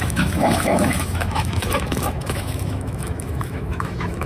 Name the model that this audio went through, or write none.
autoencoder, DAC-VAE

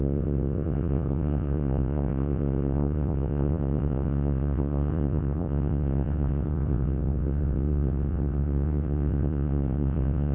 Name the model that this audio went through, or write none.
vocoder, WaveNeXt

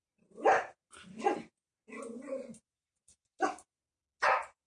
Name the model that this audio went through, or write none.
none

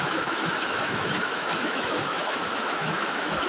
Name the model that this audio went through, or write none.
autoencoder, DAC-VAE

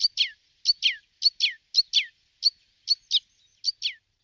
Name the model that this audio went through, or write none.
none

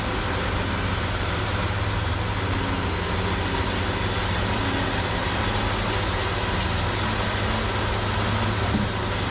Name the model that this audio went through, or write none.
none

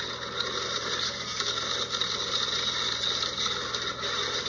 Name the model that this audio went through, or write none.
none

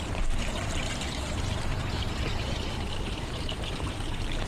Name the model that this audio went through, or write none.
vocoder, BigVGAN v2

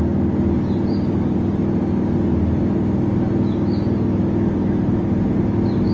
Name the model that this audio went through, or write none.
none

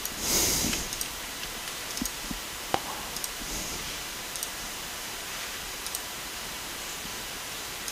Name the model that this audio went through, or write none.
vocoder, BigVGAN v2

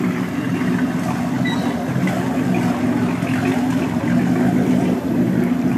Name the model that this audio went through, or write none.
none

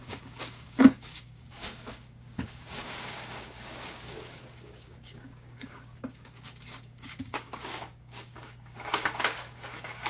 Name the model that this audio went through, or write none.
codec, DAC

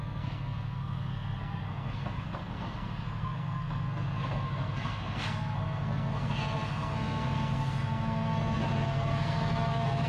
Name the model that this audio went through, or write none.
codec, SNAC